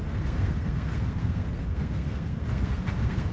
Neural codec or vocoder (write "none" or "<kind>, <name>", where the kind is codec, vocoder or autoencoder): codec, SNAC